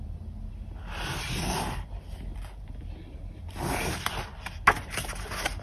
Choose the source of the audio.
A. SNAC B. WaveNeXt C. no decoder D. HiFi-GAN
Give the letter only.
C